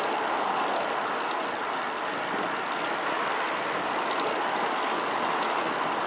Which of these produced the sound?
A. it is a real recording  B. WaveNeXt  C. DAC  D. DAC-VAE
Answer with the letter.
A